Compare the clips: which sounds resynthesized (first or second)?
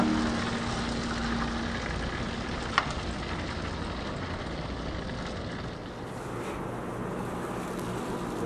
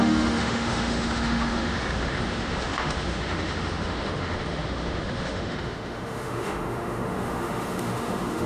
second